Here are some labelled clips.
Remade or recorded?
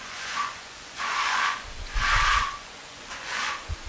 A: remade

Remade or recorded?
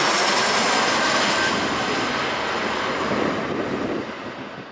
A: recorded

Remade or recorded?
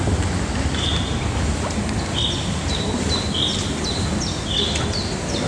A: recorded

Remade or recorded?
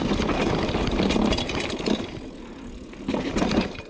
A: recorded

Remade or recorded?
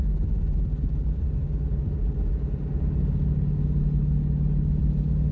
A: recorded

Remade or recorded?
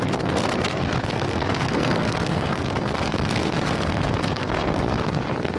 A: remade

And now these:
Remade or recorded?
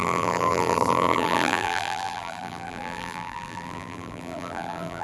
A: remade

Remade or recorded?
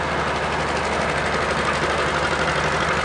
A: recorded